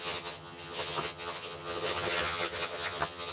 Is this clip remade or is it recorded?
remade